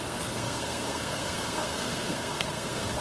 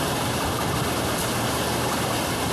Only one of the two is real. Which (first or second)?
second